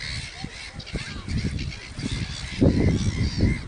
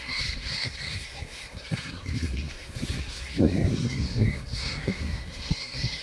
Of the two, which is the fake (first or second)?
second